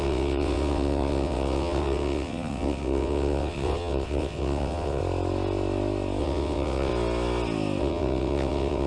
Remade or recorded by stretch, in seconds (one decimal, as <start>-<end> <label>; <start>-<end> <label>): 0.0-5.0 remade; 5.0-6.2 recorded; 6.2-6.9 remade; 6.9-7.8 recorded; 7.8-8.9 remade